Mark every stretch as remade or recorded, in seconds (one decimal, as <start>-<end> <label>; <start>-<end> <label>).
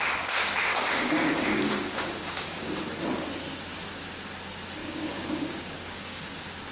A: 0.0-0.7 recorded; 0.7-2.7 remade; 2.7-4.8 recorded; 4.8-6.3 remade; 6.3-6.7 recorded